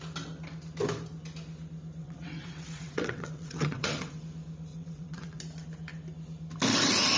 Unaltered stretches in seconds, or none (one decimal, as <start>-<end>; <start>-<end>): 0.0-2.0; 4.2-4.7; 5.4-7.2